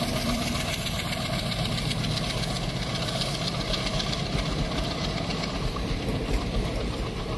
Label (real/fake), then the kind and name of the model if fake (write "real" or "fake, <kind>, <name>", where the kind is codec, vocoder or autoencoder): fake, vocoder, BigVGAN v2